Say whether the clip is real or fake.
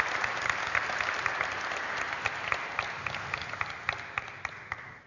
real